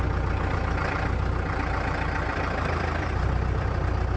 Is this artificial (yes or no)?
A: yes